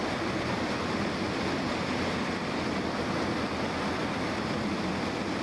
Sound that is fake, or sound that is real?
real